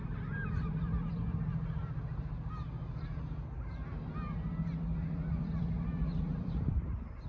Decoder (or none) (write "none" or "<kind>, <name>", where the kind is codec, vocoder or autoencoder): none